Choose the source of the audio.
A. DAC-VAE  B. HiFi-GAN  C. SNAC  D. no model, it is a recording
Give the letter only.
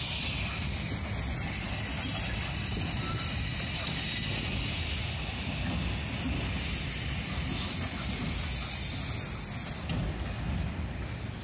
D